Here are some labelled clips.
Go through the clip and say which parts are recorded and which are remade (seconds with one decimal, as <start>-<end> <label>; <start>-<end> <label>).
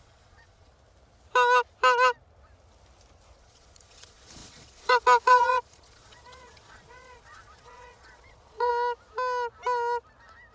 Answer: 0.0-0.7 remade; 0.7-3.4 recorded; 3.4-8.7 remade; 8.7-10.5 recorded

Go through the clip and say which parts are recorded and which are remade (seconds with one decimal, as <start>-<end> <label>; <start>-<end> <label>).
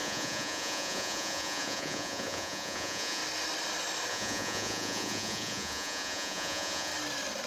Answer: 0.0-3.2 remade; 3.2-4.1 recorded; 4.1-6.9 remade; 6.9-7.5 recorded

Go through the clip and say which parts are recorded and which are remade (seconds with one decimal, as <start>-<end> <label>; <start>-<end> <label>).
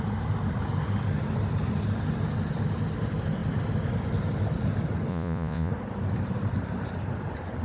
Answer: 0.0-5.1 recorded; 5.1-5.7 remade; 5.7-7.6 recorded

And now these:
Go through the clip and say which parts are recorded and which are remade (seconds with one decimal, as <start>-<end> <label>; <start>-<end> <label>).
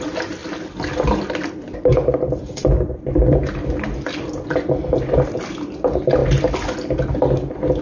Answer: 0.0-7.8 recorded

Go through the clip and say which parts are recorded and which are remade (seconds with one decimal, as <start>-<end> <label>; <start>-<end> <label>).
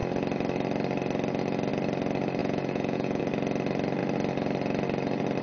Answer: 0.0-2.4 recorded; 2.4-3.2 remade; 3.2-5.4 recorded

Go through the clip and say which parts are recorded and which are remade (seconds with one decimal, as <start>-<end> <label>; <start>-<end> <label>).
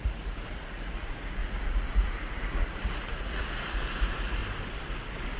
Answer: 0.0-4.4 remade; 4.4-5.4 recorded